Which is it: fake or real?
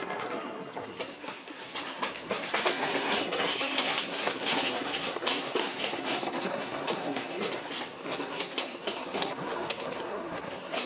fake